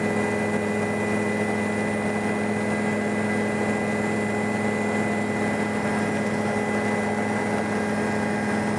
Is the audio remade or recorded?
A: recorded